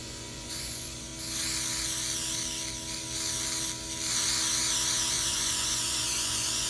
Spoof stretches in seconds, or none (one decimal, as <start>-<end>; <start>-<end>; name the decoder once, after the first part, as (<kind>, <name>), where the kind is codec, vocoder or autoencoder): 0.0-1.1 (vocoder, Vocos); 5.1-6.7